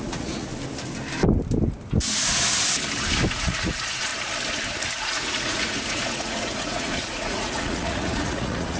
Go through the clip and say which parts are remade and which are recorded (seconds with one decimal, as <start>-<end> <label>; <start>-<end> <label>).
0.0-0.5 remade; 0.5-3.3 recorded; 3.3-4.1 remade; 4.1-5.0 recorded; 5.0-8.8 remade